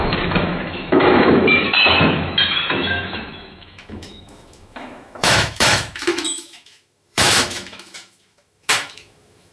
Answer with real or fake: fake